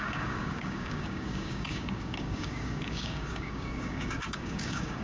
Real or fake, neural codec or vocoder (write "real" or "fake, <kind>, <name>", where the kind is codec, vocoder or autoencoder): fake, codec, DAC